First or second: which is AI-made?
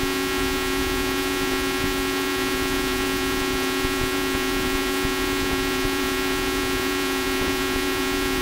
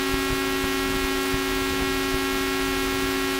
first